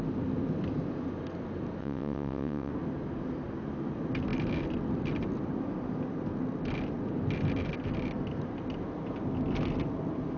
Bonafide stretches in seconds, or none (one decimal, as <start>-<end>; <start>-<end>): 0.0-1.8; 2.7-10.4